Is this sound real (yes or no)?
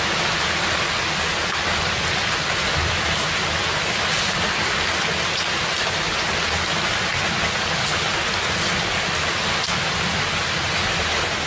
yes